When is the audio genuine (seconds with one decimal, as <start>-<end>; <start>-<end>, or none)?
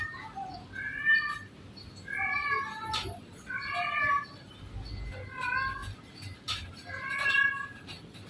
0.0-5.8; 7.3-8.3